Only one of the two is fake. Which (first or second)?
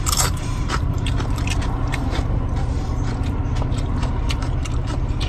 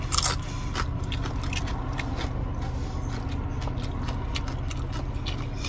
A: first